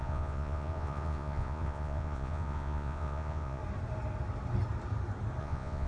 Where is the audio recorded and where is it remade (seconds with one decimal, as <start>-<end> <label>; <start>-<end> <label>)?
0.0-3.6 remade; 3.6-5.4 recorded; 5.4-5.9 remade